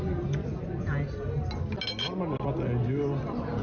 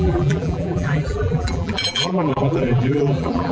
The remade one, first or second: second